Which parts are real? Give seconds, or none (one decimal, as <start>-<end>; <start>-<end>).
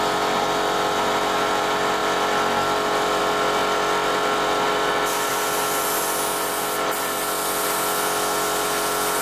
0.0-2.0; 3.2-9.2